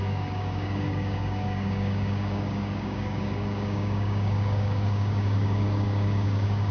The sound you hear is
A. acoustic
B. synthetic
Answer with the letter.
B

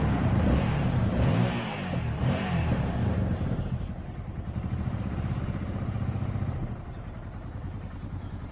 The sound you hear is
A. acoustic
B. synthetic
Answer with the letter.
B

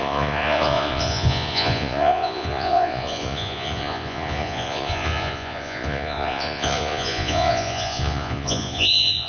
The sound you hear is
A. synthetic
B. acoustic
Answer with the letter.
A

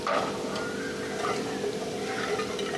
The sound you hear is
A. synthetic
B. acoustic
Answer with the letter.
B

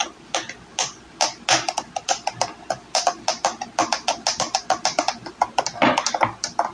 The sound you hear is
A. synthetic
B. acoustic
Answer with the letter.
B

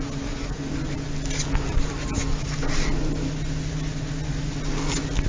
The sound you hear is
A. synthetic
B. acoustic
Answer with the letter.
B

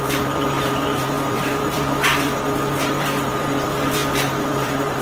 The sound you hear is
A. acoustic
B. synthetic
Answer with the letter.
B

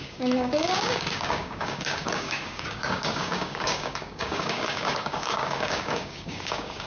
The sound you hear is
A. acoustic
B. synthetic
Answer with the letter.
B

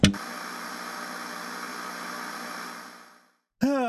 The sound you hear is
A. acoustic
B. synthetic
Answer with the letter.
A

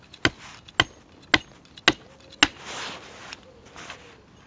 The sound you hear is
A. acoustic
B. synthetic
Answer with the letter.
A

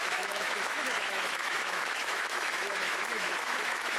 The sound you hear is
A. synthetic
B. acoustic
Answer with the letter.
A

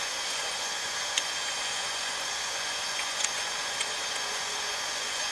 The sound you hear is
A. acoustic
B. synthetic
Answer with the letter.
B